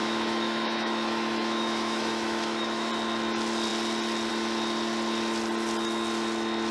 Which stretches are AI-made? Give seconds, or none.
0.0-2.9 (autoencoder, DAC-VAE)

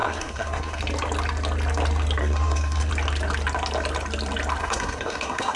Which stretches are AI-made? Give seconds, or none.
0.0-0.8 (codec, SNAC); 2.2-2.9; 4.6-5.6

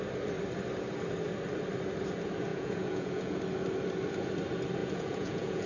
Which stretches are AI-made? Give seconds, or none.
2.5-3.4 (vocoder, Vocos); 4.8-5.7